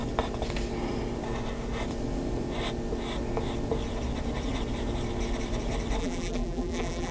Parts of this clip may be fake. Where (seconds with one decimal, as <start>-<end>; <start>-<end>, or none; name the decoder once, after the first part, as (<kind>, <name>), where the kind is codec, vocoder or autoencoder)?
6.0-7.1 (vocoder, BigVGAN v2)